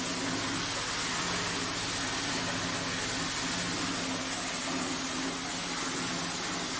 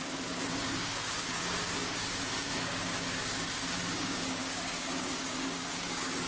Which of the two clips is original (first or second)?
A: first